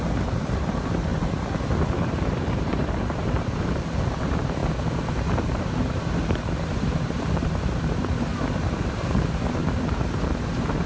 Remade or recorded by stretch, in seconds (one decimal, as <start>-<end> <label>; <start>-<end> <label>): 0.0-1.1 remade; 1.1-1.9 recorded; 1.9-4.6 remade; 4.6-5.1 recorded; 5.1-6.2 remade; 6.2-6.8 recorded; 6.8-10.9 remade